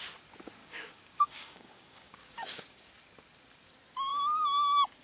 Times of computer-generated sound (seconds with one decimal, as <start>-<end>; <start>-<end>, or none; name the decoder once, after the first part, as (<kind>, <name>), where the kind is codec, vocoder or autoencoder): 0.6-2.9 (codec, DAC)